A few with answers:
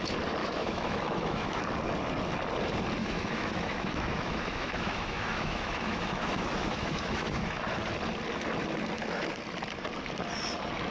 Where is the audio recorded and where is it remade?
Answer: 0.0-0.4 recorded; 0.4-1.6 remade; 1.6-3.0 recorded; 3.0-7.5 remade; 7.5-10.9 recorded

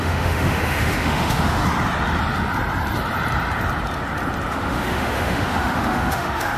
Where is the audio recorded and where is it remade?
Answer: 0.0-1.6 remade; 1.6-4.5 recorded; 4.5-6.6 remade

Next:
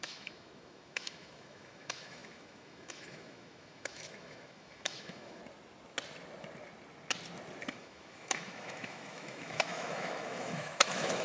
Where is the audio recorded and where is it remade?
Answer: 0.0-5.4 remade; 5.4-7.7 recorded; 7.7-11.2 remade

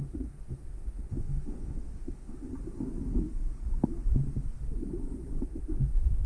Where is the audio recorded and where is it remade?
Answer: 0.0-2.5 remade; 2.5-5.4 recorded; 5.4-6.3 remade

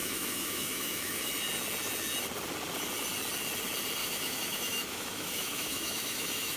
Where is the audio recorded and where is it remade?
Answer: 0.0-1.3 remade; 1.3-4.0 recorded; 4.0-6.6 remade